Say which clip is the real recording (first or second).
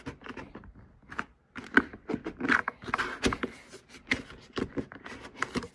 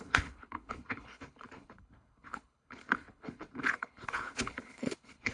first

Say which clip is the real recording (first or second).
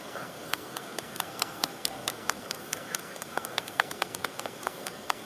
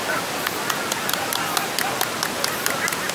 second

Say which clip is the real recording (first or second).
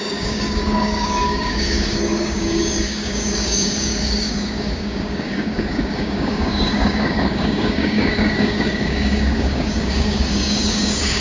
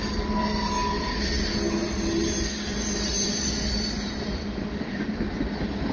second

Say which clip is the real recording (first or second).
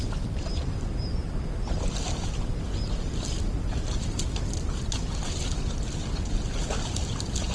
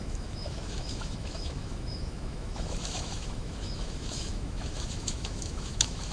first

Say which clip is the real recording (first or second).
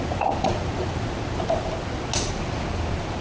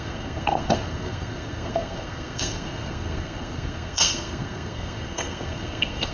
first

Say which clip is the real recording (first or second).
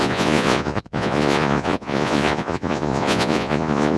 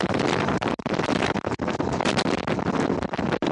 second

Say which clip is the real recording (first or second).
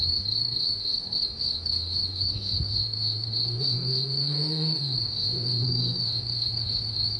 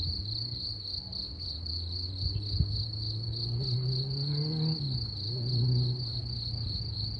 second